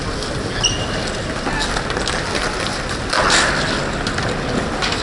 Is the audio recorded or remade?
recorded